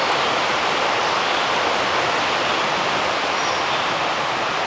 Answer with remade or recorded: recorded